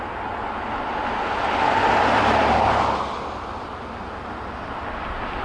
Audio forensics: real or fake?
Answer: real